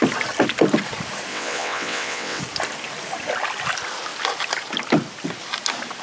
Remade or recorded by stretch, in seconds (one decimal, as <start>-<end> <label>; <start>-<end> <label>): 0.0-1.3 recorded; 1.3-2.4 remade; 2.4-6.0 recorded